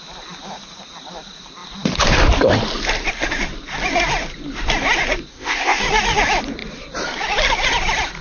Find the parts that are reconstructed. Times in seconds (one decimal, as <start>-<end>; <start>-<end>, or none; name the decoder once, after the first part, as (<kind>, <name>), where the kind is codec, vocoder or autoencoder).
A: 5.3-5.8 (codec, ZipCodec)